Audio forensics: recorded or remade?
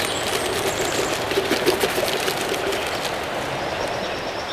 recorded